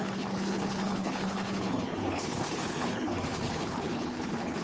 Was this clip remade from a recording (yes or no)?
yes